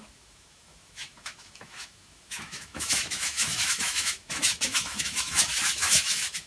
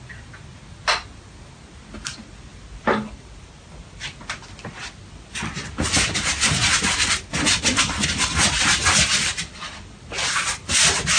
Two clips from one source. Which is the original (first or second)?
second